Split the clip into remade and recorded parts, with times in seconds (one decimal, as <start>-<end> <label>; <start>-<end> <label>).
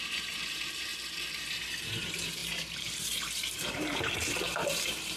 0.0-0.9 remade; 0.9-2.0 recorded; 2.0-5.2 remade